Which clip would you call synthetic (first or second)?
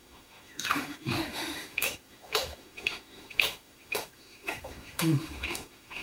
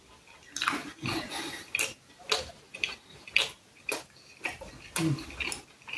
first